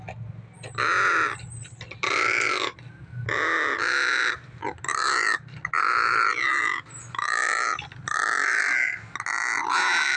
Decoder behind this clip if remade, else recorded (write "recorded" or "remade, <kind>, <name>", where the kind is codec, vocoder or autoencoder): recorded